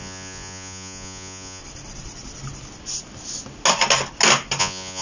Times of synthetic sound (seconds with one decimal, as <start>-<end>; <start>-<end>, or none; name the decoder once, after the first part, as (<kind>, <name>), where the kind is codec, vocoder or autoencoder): 0.0-1.6 (vocoder, Vocos); 4.6-5.0